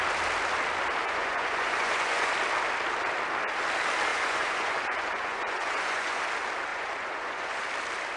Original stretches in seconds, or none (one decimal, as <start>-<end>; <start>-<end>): 0.0-1.0; 2.3-4.1; 6.2-6.7; 7.6-8.2